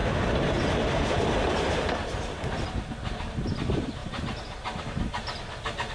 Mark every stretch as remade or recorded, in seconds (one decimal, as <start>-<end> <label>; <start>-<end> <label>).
0.0-5.9 recorded